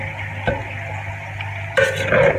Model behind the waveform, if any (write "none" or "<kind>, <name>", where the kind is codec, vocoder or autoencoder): none